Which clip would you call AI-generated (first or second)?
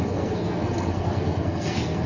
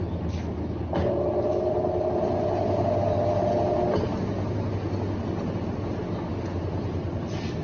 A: first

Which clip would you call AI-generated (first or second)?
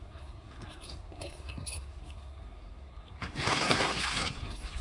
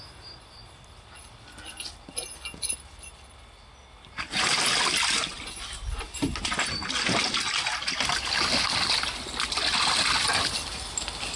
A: first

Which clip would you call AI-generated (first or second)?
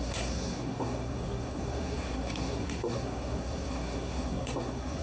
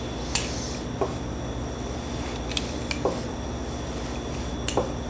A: first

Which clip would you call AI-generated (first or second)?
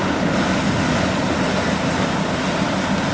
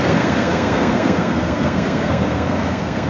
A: second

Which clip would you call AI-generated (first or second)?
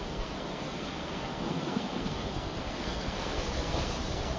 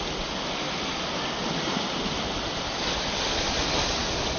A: first